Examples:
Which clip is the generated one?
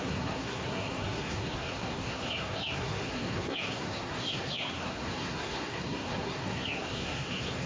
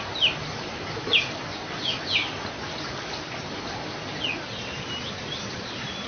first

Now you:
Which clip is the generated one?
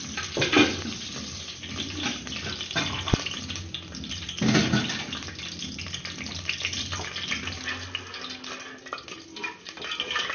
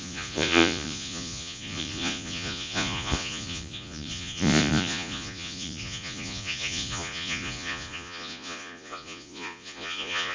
second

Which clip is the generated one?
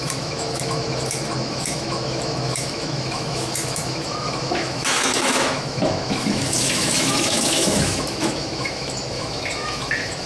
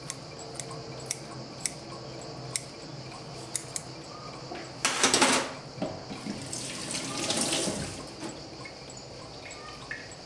first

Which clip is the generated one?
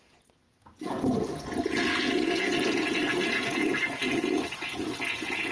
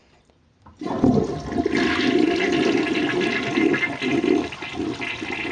first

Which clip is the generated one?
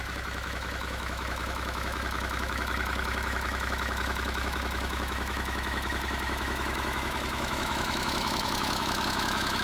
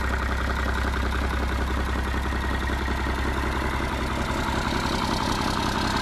first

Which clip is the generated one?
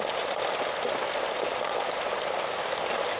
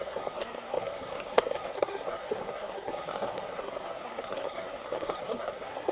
second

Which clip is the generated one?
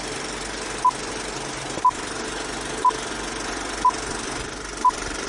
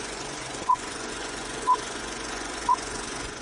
second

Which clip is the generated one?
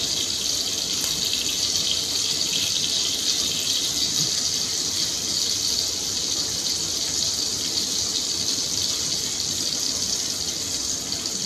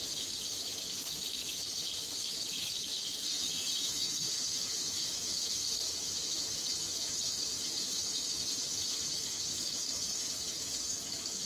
second